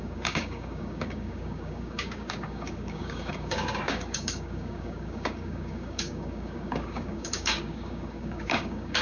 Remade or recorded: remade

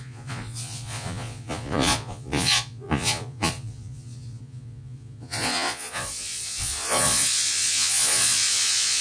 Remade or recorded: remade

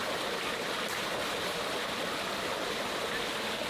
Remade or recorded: recorded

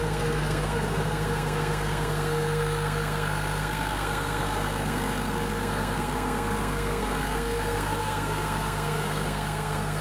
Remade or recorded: remade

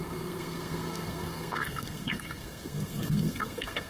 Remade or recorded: remade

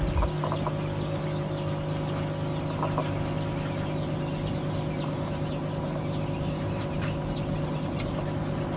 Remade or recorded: recorded